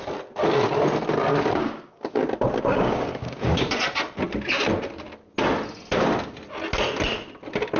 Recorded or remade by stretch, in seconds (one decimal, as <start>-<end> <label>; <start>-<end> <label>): 0.0-1.3 recorded; 1.3-2.2 remade; 2.2-2.7 recorded; 2.7-3.7 remade; 3.7-7.8 recorded

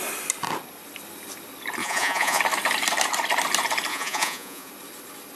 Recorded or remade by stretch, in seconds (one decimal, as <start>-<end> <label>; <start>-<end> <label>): 0.0-1.8 recorded; 1.8-2.4 remade; 2.4-3.9 recorded; 3.9-4.7 remade; 4.7-5.4 recorded

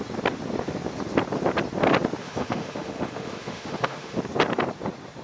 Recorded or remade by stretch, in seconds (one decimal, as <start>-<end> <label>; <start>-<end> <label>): 0.0-2.2 recorded; 2.2-4.2 remade; 4.2-5.2 recorded

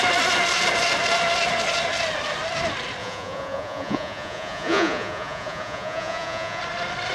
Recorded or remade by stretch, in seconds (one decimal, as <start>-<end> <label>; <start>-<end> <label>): 0.0-3.0 recorded; 3.0-6.6 remade; 6.6-7.1 recorded

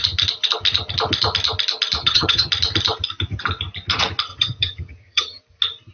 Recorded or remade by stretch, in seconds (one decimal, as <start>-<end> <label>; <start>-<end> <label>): 0.0-2.0 recorded; 2.0-2.5 remade; 2.5-4.3 recorded; 4.3-5.4 remade; 5.4-5.9 recorded